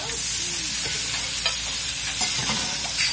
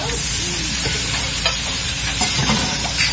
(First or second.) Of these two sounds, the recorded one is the first